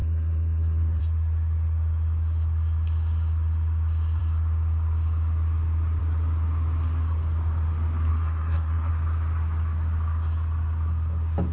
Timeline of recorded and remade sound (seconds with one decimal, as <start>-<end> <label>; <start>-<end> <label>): 0.0-1.0 remade; 1.0-8.1 recorded; 8.1-8.9 remade; 8.9-11.5 recorded